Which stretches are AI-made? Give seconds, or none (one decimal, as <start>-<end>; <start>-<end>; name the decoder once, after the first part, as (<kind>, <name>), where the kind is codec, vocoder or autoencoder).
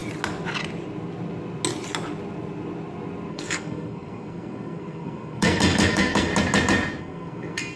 3.3-6.3 (codec, SNAC); 7.0-7.8